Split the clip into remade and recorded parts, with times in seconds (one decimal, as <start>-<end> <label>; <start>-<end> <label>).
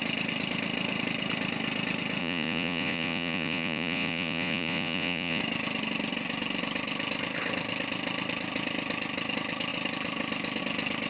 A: 0.0-2.2 recorded; 2.2-5.4 remade; 5.4-11.1 recorded